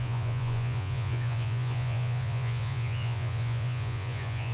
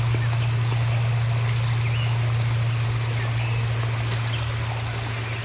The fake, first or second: first